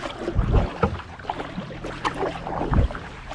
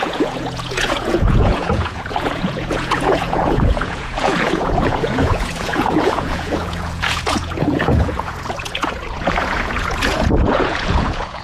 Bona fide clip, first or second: first